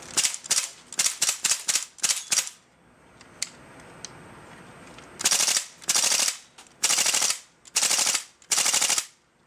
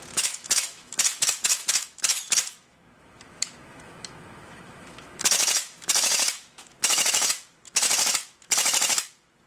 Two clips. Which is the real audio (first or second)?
first